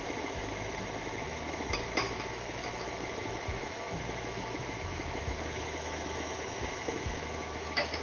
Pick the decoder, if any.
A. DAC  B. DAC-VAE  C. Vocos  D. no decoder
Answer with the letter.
B